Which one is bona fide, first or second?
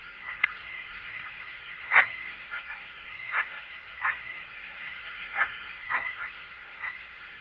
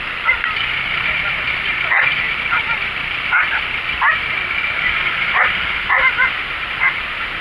second